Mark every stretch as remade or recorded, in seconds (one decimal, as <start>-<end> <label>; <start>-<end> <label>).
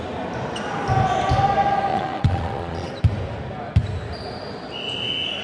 0.0-1.9 recorded; 1.9-2.9 remade; 2.9-5.4 recorded